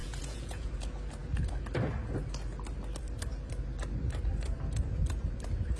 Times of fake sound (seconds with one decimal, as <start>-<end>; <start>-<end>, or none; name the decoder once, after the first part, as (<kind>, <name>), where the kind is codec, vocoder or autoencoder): 0.0-0.7 (vocoder, Vocos)